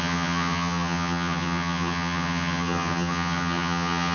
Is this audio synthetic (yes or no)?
yes